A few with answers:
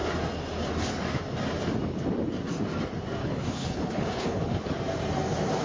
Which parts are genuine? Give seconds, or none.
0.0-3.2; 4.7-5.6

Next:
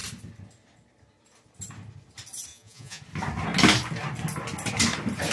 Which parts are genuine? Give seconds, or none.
0.0-2.5; 3.0-5.3

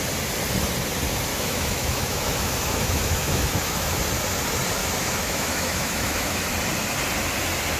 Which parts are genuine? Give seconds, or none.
0.0-1.3; 4.0-4.8; 6.5-7.8

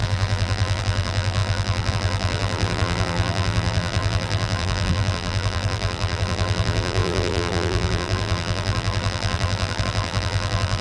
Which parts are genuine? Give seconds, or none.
none

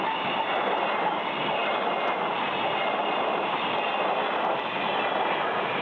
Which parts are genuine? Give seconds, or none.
0.0-5.8

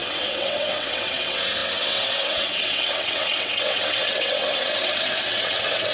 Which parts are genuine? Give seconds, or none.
none

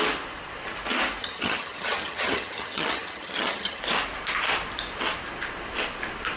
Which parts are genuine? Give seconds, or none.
0.0-1.2; 3.8-6.4

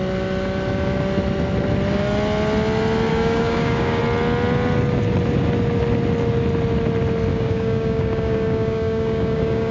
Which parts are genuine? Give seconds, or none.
0.0-3.1; 4.0-7.3